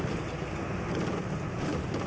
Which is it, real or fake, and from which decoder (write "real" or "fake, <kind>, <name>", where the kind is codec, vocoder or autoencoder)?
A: real